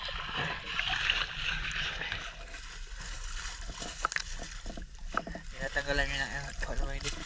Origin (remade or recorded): remade